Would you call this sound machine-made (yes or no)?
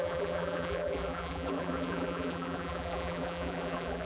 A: yes